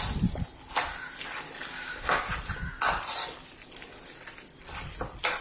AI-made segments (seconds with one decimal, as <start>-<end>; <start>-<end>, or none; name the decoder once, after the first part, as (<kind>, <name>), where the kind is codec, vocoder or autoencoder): 1.7-2.2 (codec, DAC)